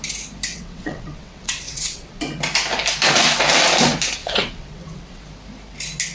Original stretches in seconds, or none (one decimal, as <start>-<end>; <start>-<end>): 0.0-0.5; 2.2-4.2; 5.2-6.1